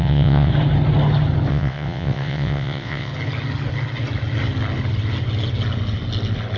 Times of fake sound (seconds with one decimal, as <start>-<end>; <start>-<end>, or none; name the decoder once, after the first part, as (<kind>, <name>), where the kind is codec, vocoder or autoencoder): 0.0-0.5 (vocoder, WaveNeXt); 1.5-3.1

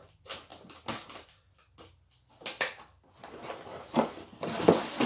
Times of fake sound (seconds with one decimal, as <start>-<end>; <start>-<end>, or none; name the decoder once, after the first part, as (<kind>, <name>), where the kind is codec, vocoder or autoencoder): none

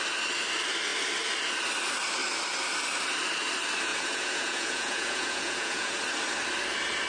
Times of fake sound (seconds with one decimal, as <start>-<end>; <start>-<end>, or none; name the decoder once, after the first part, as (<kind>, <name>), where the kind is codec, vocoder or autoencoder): 3.9-6.0 (vocoder, Vocos)

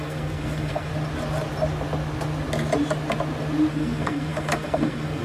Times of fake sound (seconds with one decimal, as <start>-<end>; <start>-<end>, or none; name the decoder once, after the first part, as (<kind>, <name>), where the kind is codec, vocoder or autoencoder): 0.0-0.9 (codec, SNAC); 3.7-5.2

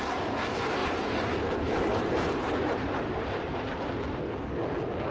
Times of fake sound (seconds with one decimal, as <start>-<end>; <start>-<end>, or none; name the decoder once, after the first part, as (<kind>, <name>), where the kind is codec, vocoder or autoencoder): 0.8-3.9 (vocoder, BigVGAN v2)

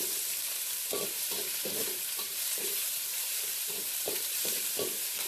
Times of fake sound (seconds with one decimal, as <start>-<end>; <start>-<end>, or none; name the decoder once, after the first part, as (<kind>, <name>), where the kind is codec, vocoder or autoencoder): 1.8-4.6 (vocoder, BigVGAN v2)

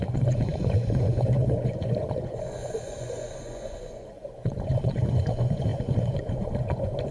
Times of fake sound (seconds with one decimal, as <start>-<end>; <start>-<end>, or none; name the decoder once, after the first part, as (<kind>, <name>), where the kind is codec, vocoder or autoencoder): 0.0-7.1 (vocoder, Vocos)